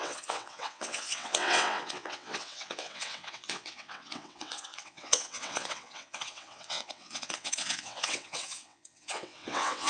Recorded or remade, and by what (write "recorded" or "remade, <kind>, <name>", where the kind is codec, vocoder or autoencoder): remade, vocoder, WaveNeXt